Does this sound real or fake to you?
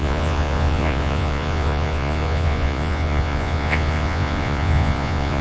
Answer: fake